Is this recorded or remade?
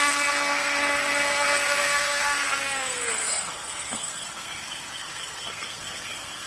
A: remade